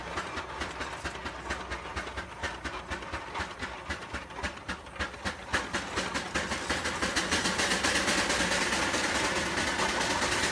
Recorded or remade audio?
recorded